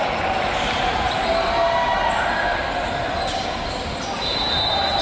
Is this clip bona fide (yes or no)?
yes